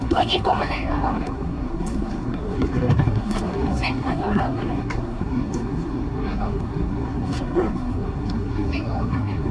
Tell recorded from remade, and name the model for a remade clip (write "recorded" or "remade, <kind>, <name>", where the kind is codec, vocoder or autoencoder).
remade, codec, SNAC